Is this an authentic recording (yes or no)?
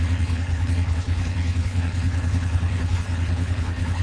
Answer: no